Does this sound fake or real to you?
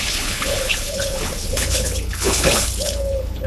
fake